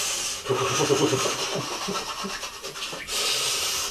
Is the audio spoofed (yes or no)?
yes